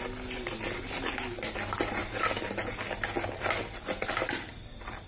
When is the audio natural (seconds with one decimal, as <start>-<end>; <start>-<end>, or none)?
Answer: 0.0-5.1

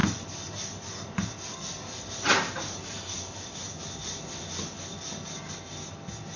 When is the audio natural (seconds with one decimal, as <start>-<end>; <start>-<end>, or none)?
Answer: 0.0-6.4

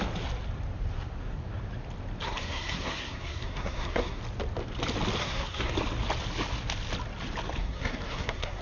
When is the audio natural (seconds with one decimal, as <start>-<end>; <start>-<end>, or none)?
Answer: 0.0-2.2; 4.2-5.2; 5.7-7.6

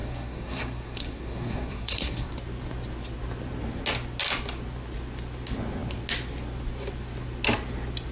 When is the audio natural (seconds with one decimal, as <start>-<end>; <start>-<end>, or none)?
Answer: 2.3-8.1

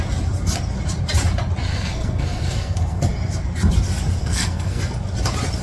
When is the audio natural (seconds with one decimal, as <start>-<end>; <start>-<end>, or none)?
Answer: 0.0-1.7; 3.0-4.2; 4.8-5.6

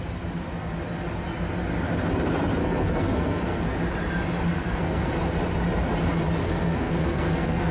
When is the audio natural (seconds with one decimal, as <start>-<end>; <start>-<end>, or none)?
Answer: 0.0-2.6; 3.6-4.5; 5.1-6.4